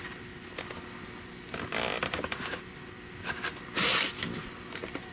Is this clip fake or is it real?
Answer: real